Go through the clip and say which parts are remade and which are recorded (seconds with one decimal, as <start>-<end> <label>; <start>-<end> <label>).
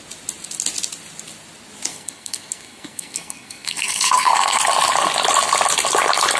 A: 0.0-1.9 recorded; 1.9-4.6 remade; 4.6-6.4 recorded